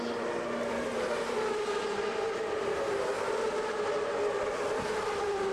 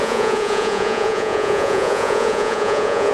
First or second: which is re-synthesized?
second